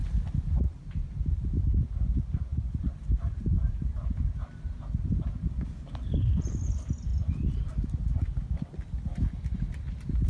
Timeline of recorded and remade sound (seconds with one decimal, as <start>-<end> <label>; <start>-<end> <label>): 0.0-2.5 recorded; 2.5-5.5 remade; 5.5-7.1 recorded; 7.1-8.2 remade; 8.2-10.3 recorded